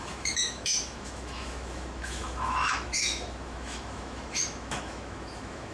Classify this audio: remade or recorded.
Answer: remade